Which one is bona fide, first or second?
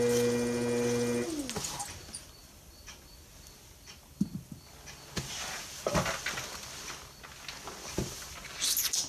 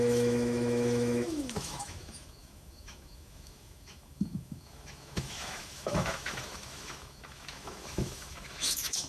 first